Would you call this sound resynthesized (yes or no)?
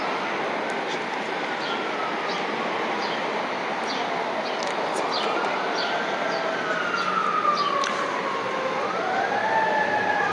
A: no